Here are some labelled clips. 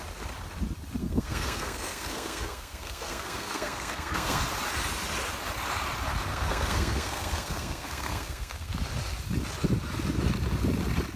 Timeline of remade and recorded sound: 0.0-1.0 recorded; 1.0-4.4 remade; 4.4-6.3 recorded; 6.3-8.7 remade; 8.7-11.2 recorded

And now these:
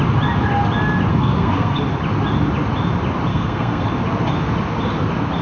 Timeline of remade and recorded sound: 0.0-1.1 recorded; 1.1-1.8 remade; 1.8-3.3 recorded; 3.3-3.9 remade; 3.9-5.4 recorded

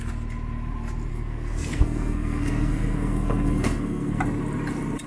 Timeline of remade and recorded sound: 0.0-1.1 recorded; 1.1-4.2 remade; 4.2-5.1 recorded